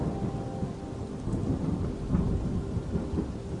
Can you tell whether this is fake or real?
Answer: real